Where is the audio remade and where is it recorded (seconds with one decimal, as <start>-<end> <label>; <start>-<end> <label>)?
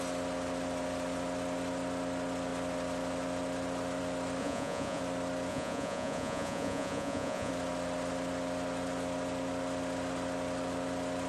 0.0-4.4 recorded; 4.4-5.0 remade; 5.0-5.5 recorded; 5.5-7.5 remade; 7.5-11.3 recorded